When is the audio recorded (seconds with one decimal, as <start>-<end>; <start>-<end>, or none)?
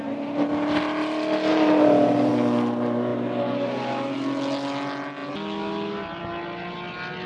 0.0-1.5; 2.3-7.3